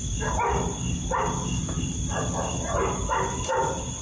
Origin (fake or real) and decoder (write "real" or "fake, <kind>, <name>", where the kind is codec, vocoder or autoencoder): real